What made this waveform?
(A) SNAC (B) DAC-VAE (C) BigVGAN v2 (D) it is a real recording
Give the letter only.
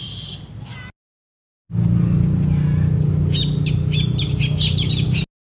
D